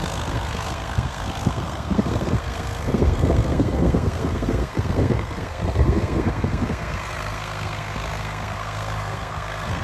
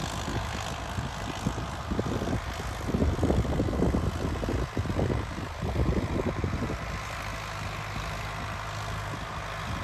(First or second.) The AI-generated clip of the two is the first